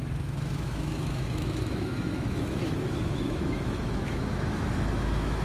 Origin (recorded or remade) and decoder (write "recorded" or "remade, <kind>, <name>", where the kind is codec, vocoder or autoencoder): remade, autoencoder, DAC-VAE